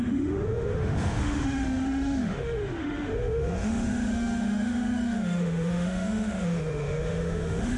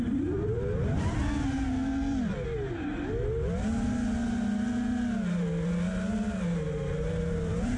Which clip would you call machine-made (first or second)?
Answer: first